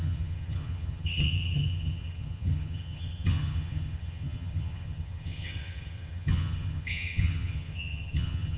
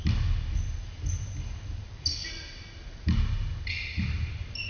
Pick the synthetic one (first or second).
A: first